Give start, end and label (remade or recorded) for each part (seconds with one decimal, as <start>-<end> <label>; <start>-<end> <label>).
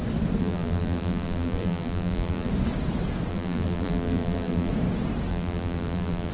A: 0.0-0.4 recorded; 0.4-2.5 remade; 2.5-3.3 recorded; 3.3-4.7 remade; 4.7-5.3 recorded; 5.3-6.3 remade